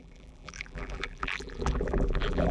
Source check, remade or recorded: remade